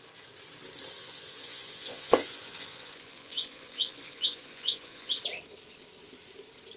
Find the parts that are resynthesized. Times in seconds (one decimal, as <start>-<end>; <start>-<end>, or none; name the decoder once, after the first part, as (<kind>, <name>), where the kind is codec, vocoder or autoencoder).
1.0-5.1 (vocoder, Vocos)